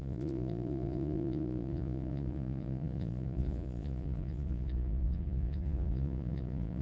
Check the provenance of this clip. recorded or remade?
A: remade